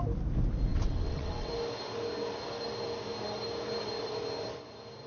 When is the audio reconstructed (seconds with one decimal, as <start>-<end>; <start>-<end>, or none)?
0.7-1.5